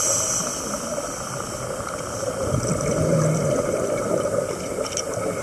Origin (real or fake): real